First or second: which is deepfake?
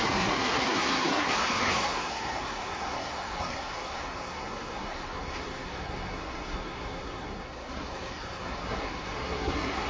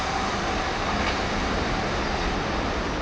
first